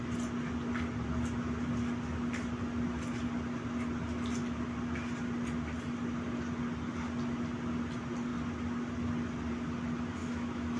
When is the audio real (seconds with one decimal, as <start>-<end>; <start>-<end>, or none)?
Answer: 0.0-10.2